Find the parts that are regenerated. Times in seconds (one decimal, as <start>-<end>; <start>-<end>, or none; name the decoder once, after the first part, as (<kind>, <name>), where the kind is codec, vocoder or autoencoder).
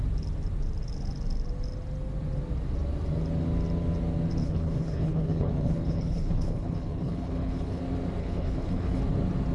4.4-7.8 (codec, HILCodec); 8.2-9.0